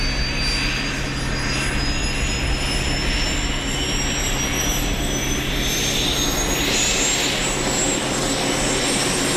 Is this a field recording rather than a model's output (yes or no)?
yes